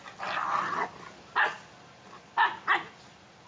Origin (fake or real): real